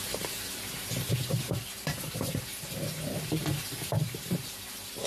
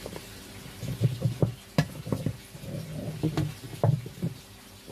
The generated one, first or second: first